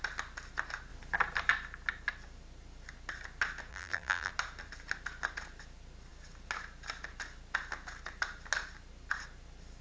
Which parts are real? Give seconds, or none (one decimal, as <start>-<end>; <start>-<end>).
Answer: 0.0-3.7; 4.3-9.8